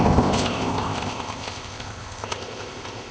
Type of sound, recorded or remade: remade